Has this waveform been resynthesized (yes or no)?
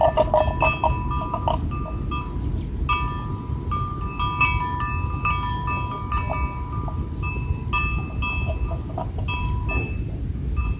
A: no